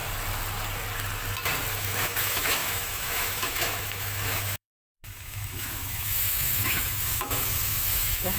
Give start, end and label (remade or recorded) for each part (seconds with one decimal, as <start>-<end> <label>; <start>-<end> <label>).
0.0-1.7 recorded; 1.7-8.4 remade